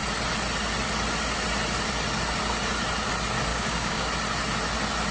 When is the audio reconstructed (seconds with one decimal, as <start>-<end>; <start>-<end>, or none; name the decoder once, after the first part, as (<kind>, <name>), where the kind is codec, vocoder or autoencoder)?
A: 3.5-4.1 (codec, DAC)